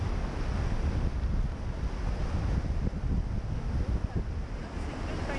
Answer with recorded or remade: recorded